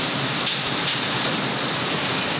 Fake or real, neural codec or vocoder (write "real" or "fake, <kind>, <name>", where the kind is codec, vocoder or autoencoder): real